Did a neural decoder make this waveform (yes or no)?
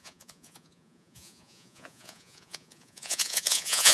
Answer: yes